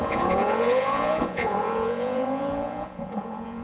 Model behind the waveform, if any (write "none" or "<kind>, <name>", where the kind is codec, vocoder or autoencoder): vocoder, Vocos